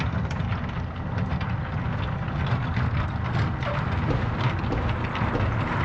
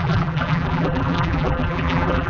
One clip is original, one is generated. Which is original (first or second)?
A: first